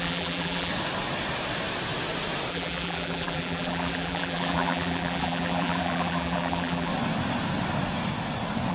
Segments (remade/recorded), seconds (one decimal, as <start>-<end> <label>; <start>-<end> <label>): 0.0-0.7 remade; 0.7-2.5 recorded; 2.5-6.9 remade; 6.9-8.7 recorded